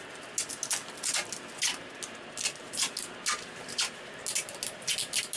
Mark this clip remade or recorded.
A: recorded